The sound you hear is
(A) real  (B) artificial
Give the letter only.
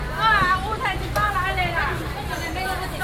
A